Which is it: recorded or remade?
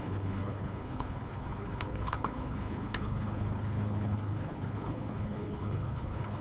remade